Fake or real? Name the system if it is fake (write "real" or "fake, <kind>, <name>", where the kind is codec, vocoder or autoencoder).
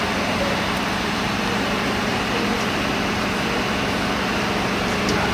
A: real